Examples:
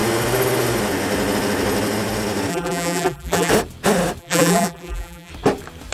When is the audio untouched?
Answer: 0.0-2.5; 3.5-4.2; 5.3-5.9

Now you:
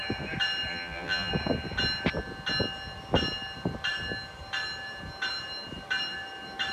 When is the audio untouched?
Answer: 0.0-0.7; 1.3-6.7

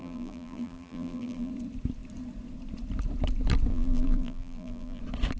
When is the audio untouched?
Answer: 1.5-3.7; 5.0-5.4

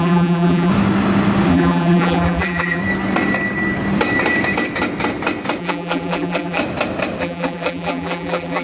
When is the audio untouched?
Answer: 0.7-1.5; 2.8-5.6; 6.6-7.2